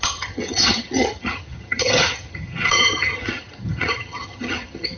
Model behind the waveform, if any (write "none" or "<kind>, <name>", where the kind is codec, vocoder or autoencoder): vocoder, HiFi-GAN